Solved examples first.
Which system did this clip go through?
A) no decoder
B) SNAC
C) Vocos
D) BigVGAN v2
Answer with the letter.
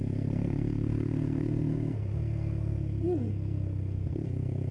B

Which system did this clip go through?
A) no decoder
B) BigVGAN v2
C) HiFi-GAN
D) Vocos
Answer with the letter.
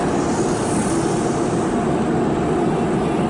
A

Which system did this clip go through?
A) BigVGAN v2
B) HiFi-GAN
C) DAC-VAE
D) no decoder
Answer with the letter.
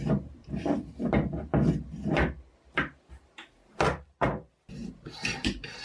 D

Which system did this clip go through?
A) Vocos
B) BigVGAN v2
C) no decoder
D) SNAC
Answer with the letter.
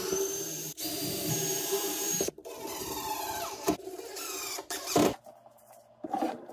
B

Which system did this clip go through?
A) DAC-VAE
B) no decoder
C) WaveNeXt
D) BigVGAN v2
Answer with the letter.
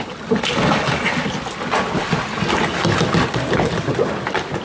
B